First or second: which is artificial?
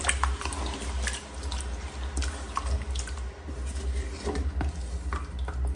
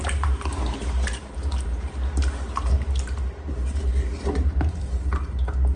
second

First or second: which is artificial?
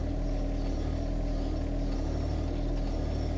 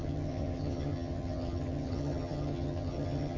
second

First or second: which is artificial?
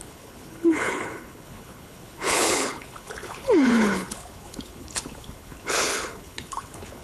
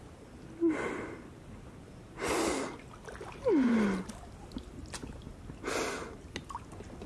first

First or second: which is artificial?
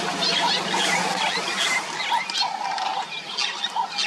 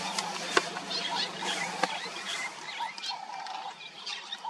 second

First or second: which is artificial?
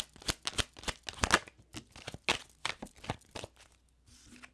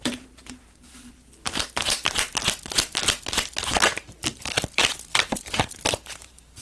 second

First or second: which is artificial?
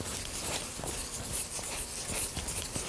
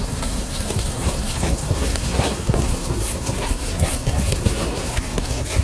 second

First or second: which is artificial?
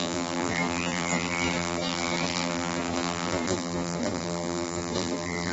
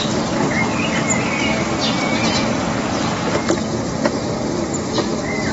first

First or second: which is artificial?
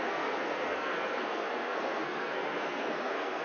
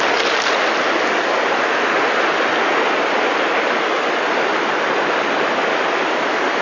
first